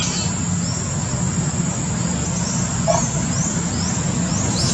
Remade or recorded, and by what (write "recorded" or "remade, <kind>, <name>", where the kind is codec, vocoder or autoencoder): recorded